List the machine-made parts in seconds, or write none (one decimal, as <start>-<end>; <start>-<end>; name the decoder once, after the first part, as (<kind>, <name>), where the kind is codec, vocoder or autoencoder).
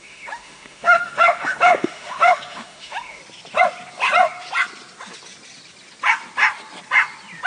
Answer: 0.0-3.2 (autoencoder, DAC-VAE)